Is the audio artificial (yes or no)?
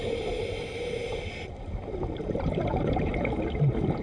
yes